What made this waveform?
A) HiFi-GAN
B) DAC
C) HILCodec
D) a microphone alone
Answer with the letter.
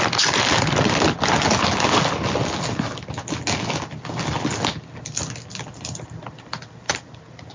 D